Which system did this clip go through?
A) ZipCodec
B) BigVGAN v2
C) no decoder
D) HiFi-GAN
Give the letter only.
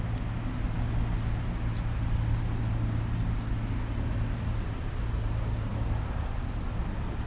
C